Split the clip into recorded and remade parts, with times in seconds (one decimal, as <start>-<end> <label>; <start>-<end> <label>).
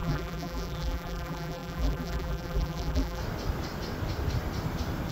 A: 0.0-3.2 remade; 3.2-5.1 recorded